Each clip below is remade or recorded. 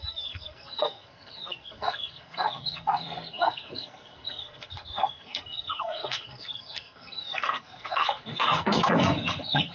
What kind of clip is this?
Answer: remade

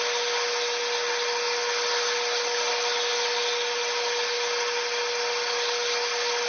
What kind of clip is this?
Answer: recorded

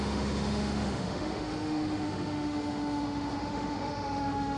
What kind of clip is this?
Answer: remade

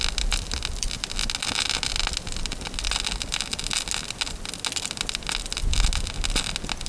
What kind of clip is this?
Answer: recorded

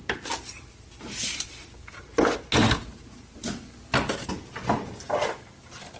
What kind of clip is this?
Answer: recorded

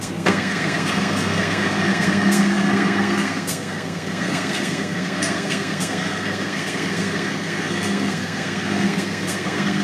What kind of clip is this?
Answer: remade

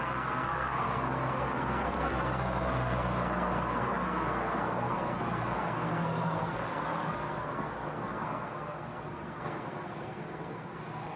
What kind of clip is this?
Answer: remade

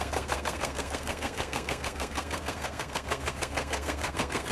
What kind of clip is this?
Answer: remade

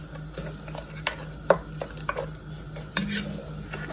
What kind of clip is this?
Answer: recorded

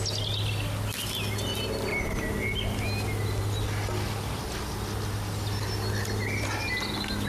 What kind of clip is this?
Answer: recorded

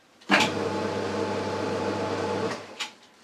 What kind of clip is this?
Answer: remade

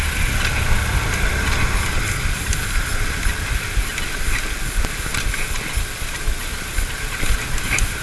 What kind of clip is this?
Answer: recorded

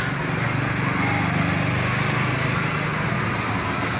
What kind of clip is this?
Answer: recorded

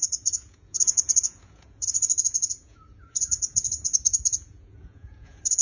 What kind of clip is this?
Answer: remade